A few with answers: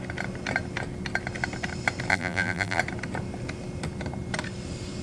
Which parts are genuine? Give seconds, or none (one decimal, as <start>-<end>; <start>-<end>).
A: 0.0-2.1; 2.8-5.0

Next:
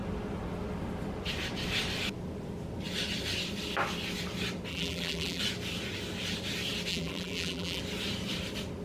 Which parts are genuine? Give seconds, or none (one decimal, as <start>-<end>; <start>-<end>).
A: 0.0-4.7; 5.4-6.9; 7.8-8.8

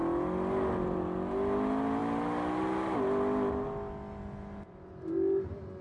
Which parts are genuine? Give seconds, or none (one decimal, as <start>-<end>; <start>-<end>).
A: 0.0-5.8

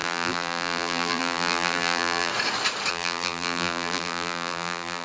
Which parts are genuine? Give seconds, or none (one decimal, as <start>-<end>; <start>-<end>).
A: 2.3-2.9

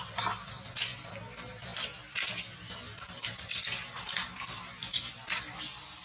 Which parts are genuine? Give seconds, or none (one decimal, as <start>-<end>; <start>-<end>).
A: 0.0-6.0

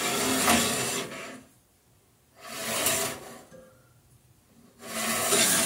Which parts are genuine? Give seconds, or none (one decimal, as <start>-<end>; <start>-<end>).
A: 0.0-5.7

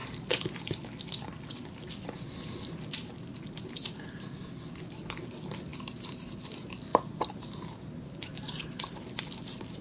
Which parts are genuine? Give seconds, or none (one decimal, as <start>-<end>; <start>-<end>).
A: 0.7-3.8; 4.4-6.9; 9.2-9.8